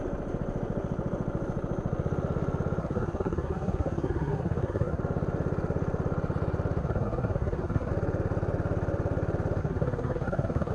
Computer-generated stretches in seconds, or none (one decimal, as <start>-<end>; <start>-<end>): 2.8-5.0; 6.8-7.9; 9.6-10.7